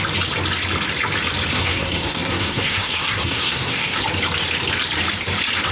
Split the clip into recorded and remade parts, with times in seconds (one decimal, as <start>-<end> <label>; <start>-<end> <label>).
0.0-1.5 recorded; 1.5-4.0 remade; 4.0-5.7 recorded